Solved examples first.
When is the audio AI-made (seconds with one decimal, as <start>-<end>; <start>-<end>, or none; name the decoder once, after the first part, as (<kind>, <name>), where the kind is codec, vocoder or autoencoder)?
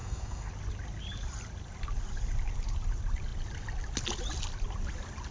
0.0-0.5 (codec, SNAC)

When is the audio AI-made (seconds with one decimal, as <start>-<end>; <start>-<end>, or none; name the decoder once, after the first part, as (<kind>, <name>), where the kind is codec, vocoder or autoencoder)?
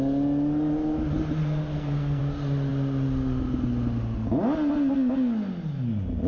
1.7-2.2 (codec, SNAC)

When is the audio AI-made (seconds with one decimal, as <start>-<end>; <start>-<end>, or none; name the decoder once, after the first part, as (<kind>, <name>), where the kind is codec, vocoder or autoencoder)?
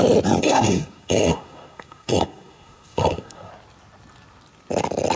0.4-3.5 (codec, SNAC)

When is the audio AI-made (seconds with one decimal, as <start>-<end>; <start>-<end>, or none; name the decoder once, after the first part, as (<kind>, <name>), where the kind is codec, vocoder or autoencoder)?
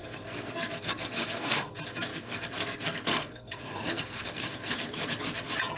0.0-1.7 (codec, SNAC); 2.1-5.2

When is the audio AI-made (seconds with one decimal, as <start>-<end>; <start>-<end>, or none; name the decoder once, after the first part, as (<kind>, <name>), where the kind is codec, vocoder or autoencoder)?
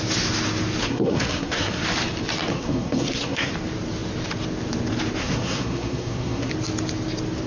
0.8-1.8 (codec, SNAC); 2.5-3.5; 5.2-6.5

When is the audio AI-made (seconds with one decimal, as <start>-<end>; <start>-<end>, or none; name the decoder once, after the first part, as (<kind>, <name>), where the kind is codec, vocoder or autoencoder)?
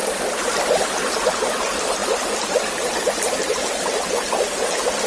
none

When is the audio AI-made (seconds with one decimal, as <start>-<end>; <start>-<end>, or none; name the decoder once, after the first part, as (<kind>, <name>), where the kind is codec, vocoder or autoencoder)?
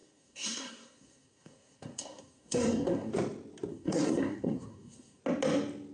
0.0-3.1 (codec, SNAC); 3.7-5.2